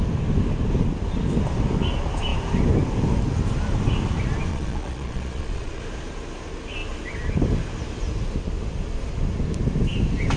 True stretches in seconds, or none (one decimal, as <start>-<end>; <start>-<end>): 0.0-4.5; 5.8-10.4